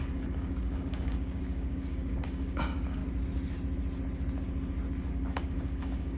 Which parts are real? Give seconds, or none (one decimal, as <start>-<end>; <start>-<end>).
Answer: 3.0-5.1